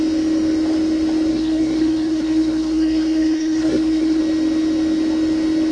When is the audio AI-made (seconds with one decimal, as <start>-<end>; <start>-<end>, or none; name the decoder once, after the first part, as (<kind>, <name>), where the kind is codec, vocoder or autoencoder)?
1.3-4.2 (codec, SNAC)